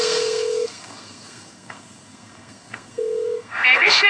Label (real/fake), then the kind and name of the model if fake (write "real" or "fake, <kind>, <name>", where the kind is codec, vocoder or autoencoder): fake, codec, SNAC